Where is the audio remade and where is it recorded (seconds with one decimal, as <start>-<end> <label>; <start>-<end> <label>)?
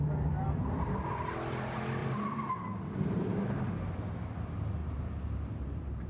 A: 0.0-2.0 recorded; 2.0-3.7 remade; 3.7-4.8 recorded; 4.8-6.1 remade